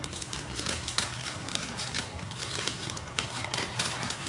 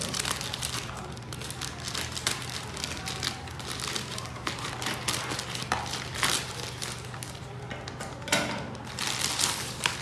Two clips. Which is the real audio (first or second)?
second